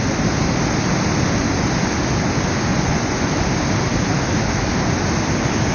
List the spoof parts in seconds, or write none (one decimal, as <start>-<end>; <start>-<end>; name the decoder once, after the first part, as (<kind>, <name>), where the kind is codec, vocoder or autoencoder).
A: 2.7-3.3 (vocoder, Vocos)